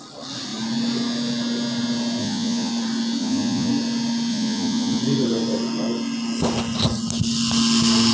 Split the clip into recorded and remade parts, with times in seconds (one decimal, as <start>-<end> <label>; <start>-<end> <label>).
0.0-2.2 recorded; 2.2-2.7 remade; 2.7-3.2 recorded; 3.2-3.7 remade; 3.7-4.3 recorded; 4.3-5.0 remade; 5.0-8.1 recorded